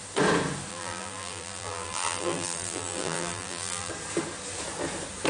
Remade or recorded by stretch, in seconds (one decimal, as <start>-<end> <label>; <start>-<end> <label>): 0.0-0.7 recorded; 0.7-3.9 remade; 3.9-5.3 recorded